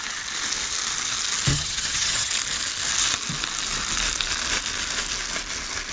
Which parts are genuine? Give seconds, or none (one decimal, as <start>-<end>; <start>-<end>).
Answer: 0.0-1.5; 2.3-5.9